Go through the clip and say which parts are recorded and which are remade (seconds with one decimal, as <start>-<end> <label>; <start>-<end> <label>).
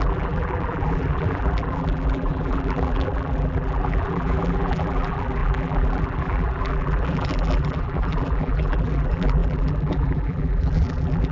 0.0-11.3 remade